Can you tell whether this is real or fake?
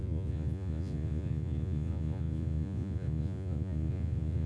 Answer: fake